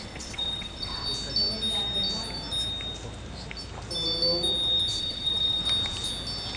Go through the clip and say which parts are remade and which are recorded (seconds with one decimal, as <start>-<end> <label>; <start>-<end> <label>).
0.0-1.0 remade; 1.0-5.0 recorded; 5.0-5.6 remade; 5.6-6.6 recorded